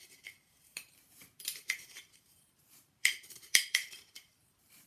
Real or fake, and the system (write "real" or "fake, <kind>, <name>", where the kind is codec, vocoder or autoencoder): fake, vocoder, BigVGAN v2